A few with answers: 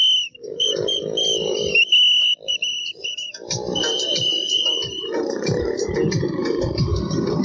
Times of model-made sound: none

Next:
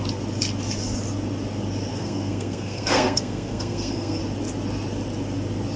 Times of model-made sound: 1.9-4.2 (codec, SNAC)

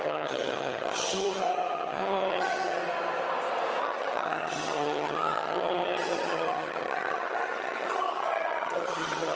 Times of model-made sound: 0.0-2.8 (vocoder, HiFi-GAN); 3.8-9.4

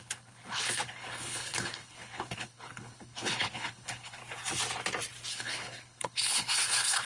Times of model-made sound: 0.0-4.2 (codec, HILCodec); 5.3-7.0

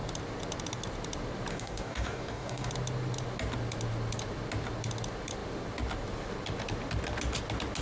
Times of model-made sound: 1.5-2.7 (codec, DAC)

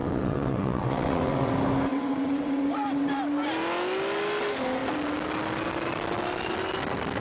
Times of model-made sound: 0.0-1.5 (vocoder, WaveNeXt); 1.9-3.2

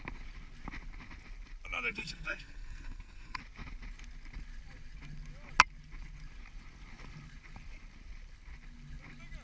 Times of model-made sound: 1.9-3.4 (codec, SNAC)

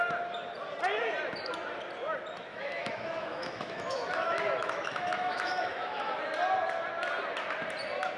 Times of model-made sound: 2.5-6.2 (autoencoder, DAC-VAE)